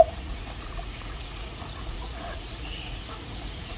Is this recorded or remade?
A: remade